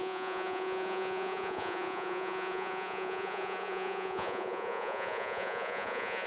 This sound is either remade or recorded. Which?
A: remade